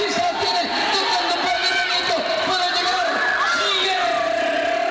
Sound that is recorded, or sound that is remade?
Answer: recorded